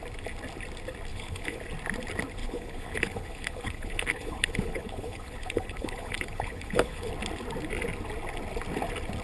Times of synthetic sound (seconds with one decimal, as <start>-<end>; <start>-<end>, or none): 1.1-1.6; 2.4-7.1